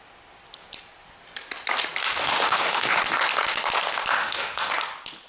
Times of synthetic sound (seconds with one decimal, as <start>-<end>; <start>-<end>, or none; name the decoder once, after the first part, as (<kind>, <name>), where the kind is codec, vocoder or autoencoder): 2.1-3.0 (autoencoder, DAC-VAE); 4.2-4.7